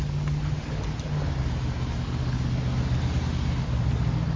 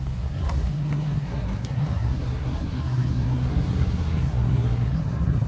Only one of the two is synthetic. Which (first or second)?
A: second